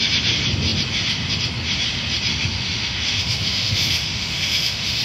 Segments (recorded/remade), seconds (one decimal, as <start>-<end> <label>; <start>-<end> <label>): 0.0-2.3 recorded; 2.3-5.0 remade